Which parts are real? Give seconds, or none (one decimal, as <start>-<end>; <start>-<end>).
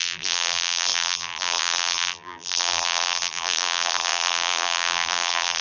none